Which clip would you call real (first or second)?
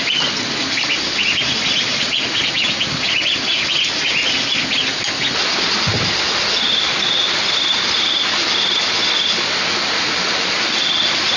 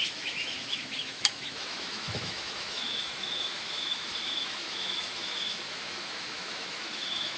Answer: first